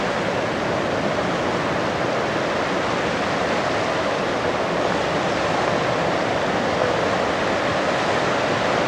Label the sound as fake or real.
real